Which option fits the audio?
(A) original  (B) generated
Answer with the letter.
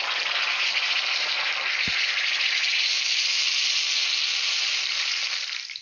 A